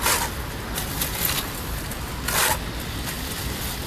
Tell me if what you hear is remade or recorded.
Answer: recorded